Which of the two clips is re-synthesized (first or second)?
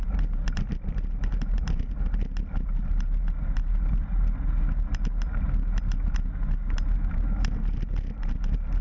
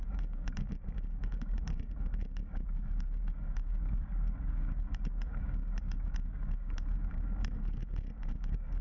second